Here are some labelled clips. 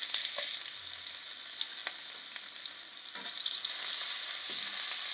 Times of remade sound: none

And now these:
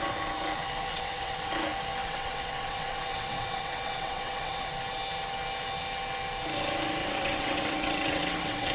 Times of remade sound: 0.9-1.5 (vocoder, WaveNeXt); 2.0-4.7; 7.0-8.7

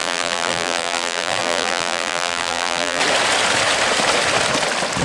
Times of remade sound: 0.0-3.0 (vocoder, BigVGAN v2)

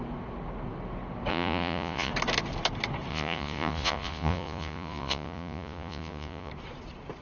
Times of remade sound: 1.3-2.1 (vocoder, Vocos); 3.1-6.5

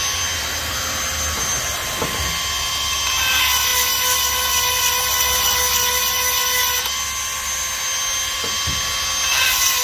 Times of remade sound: none